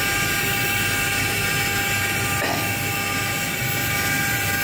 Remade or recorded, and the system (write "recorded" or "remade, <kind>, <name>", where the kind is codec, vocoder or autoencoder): recorded